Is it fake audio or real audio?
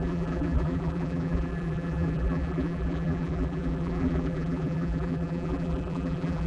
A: fake